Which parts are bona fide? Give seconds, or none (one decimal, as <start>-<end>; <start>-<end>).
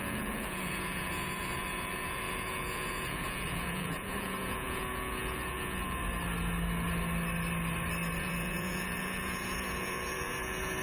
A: 6.0-8.2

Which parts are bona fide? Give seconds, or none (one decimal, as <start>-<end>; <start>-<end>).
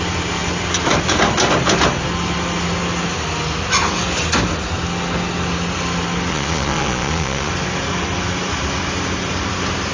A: 0.0-6.3; 7.5-9.9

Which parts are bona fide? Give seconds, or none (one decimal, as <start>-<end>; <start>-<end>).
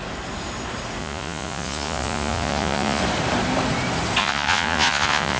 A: 0.0-1.0; 3.0-4.2